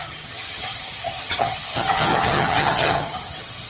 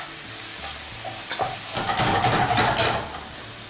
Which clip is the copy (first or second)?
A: first